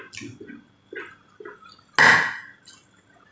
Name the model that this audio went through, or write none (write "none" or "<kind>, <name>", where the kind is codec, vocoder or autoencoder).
none